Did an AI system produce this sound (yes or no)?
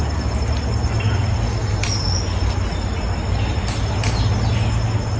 no